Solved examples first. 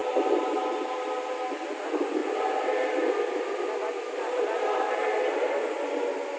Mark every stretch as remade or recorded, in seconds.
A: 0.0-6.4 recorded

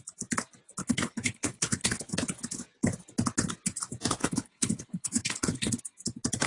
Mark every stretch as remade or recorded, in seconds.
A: 0.0-0.8 recorded; 0.8-2.1 remade; 2.1-4.2 recorded; 4.2-5.8 remade; 5.8-6.5 recorded

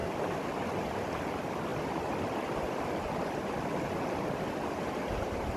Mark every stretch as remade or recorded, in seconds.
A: 0.0-5.6 recorded

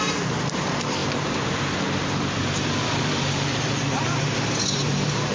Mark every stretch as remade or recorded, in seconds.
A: 0.0-5.3 remade